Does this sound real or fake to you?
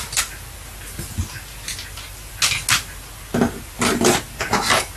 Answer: real